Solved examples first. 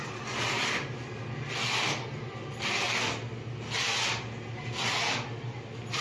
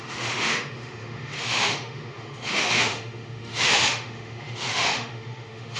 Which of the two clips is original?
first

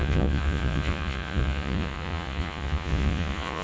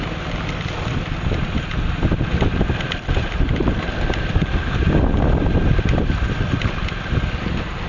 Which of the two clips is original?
second